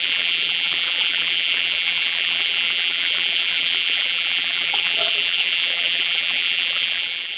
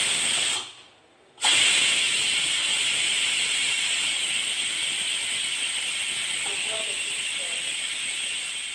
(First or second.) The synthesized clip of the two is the first